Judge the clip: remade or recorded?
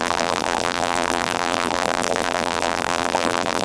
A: remade